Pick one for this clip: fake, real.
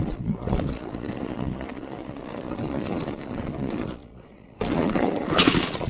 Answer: fake